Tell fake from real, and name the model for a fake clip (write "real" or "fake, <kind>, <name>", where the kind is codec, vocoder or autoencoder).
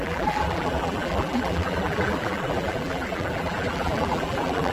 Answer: fake, vocoder, BigVGAN v2